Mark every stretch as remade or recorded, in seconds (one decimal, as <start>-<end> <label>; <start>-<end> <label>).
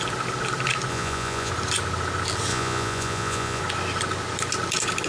0.0-0.9 recorded; 0.9-1.5 remade; 1.5-2.5 recorded; 2.5-3.6 remade; 3.6-5.1 recorded